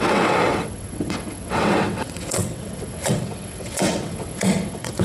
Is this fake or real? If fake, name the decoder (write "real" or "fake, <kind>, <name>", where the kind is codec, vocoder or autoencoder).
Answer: fake, vocoder, WaveNeXt